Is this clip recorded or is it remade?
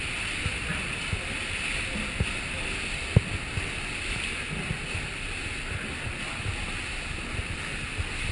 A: recorded